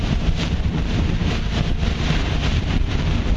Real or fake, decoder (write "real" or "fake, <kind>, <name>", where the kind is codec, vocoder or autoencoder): fake, vocoder, BigVGAN v2